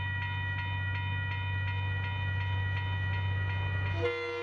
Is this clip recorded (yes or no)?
yes